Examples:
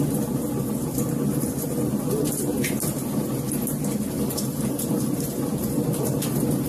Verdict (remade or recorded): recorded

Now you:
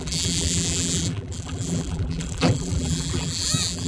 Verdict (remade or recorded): remade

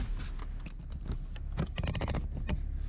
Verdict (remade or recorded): recorded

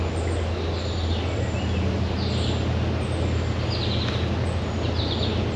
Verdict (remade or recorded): recorded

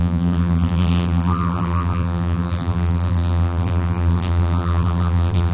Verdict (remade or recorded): remade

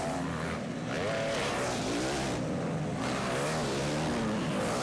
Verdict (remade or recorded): recorded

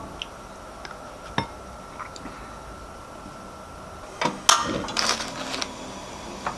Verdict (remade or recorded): recorded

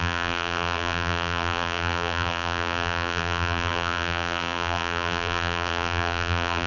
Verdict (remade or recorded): remade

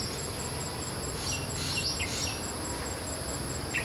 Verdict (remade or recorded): recorded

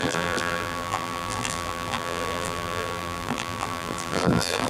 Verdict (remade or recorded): remade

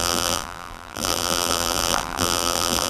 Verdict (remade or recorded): remade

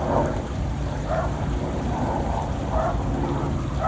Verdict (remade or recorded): remade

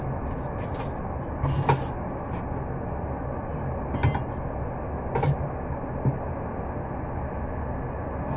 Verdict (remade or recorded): recorded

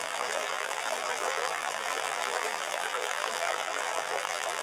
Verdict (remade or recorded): remade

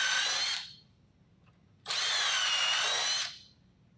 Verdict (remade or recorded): recorded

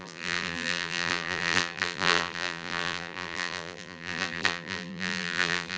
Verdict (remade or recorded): remade